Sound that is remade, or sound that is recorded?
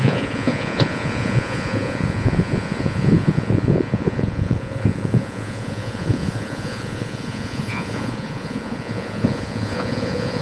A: remade